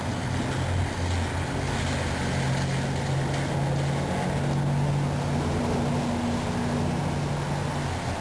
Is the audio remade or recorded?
recorded